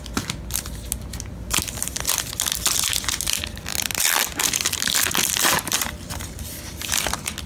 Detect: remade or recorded recorded